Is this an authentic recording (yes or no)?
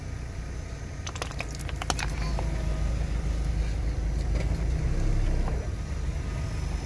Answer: yes